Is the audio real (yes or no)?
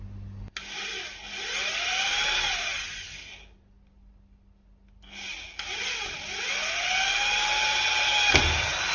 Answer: yes